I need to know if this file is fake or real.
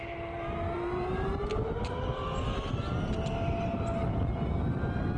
real